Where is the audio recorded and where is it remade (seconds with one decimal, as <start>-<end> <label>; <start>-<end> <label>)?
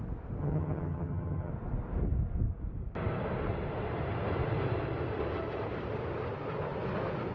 0.0-0.4 recorded; 0.4-1.5 remade; 1.5-7.3 recorded